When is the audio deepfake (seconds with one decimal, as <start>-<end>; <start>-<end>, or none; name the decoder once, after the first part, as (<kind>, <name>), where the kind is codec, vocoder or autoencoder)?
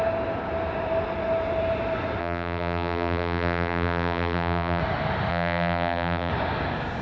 2.2-4.8 (vocoder, BigVGAN v2); 5.3-6.3